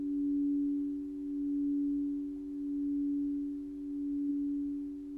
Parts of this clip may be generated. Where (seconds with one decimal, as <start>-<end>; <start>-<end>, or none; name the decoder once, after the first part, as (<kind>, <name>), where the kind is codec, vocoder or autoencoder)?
none